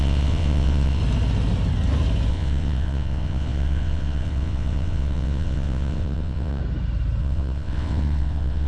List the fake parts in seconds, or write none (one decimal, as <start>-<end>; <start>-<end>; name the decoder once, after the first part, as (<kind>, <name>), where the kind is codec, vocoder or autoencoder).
0.0-1.0 (vocoder, WaveNeXt); 2.3-6.6; 7.2-8.7